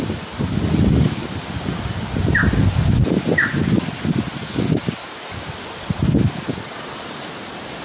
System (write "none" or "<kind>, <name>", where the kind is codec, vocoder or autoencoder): none